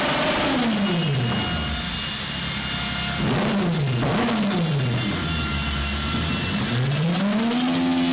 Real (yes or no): yes